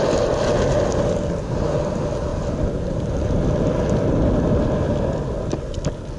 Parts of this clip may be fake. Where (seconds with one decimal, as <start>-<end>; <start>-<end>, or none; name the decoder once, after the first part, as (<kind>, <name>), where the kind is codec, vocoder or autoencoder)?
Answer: 2.3-3.6 (vocoder, BigVGAN v2)